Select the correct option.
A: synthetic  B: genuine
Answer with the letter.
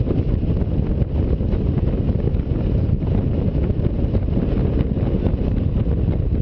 B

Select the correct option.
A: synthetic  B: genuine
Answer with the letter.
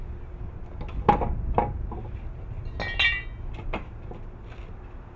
B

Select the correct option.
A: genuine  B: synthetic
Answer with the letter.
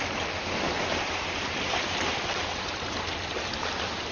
A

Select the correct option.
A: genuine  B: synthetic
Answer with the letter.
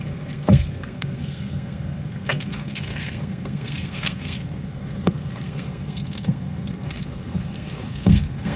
B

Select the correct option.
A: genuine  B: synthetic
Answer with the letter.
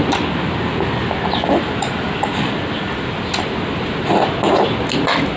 A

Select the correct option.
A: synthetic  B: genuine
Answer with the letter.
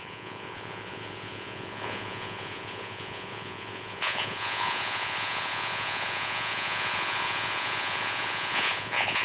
A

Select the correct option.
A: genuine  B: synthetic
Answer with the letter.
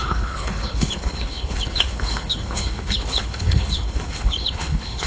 B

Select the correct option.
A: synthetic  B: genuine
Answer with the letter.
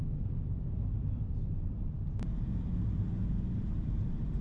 A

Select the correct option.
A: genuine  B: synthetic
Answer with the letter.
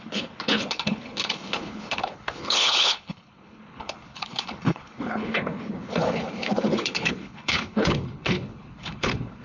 B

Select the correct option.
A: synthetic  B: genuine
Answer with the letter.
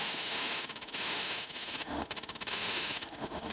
A